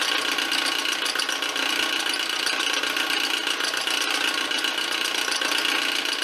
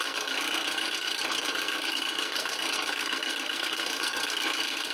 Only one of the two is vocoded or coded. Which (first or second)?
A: second